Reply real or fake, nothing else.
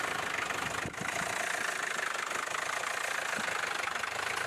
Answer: real